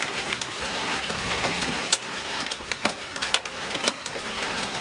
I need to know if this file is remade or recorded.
remade